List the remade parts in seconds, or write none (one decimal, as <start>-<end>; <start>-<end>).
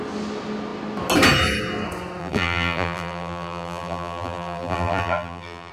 2.2-5.7